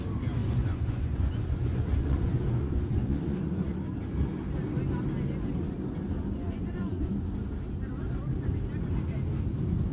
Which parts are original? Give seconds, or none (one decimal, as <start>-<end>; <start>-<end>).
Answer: 0.0-0.4; 3.7-6.5; 7.1-9.9